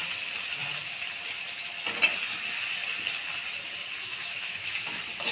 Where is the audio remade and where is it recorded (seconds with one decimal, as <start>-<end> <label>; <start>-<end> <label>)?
0.0-4.0 recorded; 4.0-4.8 remade; 4.8-5.3 recorded